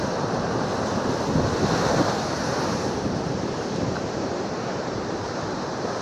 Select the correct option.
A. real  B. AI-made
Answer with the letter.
B